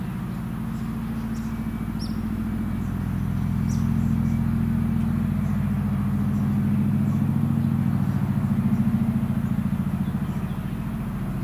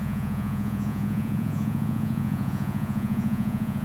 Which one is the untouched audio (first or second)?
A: first